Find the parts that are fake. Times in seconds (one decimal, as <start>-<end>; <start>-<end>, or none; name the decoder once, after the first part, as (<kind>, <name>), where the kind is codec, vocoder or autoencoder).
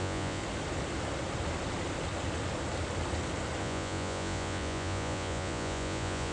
0.0-0.4 (vocoder, Vocos); 3.6-6.3